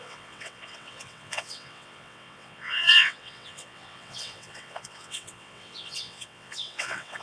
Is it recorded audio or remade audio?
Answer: remade